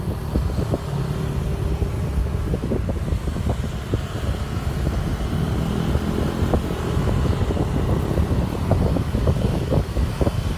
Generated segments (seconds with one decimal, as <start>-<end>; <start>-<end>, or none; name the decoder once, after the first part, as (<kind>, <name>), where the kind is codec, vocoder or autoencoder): 2.2-3.0 (codec, DAC); 8.9-10.1